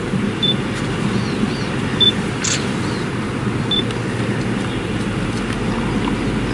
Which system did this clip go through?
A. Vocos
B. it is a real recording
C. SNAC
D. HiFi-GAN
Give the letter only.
B